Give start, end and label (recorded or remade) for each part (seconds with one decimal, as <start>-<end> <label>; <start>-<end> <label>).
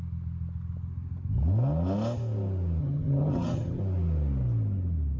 0.0-2.8 recorded; 2.8-3.8 remade; 3.8-5.2 recorded